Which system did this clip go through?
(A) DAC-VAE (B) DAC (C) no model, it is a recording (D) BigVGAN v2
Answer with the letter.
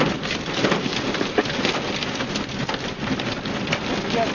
C